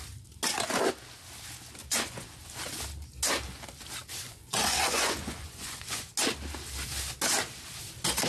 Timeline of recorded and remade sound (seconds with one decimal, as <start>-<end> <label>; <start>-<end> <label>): 0.0-1.8 recorded; 1.8-2.4 remade; 2.4-4.2 recorded; 4.2-6.1 remade; 6.1-8.3 recorded